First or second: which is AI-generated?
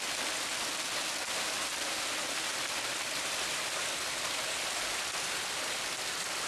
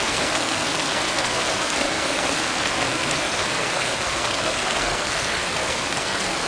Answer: second